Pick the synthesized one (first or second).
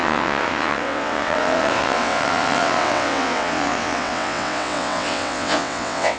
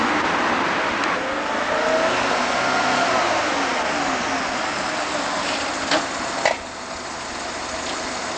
first